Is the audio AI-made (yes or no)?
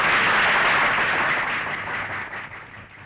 no